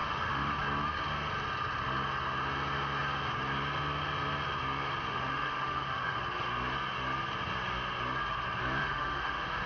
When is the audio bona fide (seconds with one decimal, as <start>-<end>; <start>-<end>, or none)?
0.6-5.1; 6.2-8.8